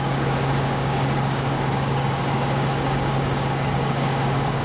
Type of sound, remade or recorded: remade